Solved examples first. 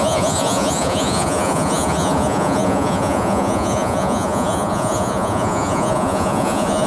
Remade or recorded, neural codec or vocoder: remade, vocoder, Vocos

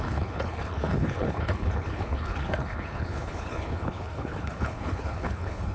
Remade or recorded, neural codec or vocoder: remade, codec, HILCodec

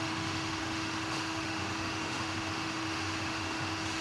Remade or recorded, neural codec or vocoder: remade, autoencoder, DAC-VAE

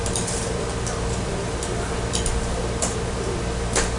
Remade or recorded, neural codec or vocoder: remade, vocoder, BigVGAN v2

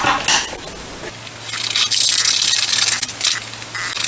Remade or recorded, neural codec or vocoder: recorded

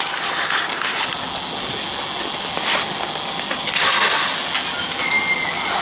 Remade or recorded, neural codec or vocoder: recorded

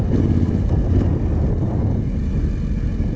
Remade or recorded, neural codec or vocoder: recorded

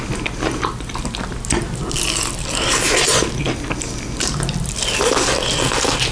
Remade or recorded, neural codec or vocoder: recorded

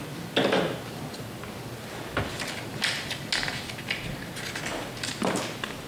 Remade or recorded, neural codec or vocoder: recorded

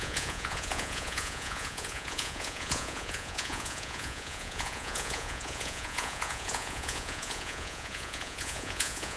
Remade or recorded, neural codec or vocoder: remade, vocoder, Vocos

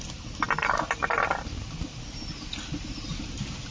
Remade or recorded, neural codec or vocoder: recorded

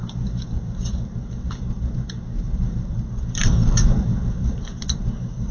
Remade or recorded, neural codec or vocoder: remade, vocoder, BigVGAN v2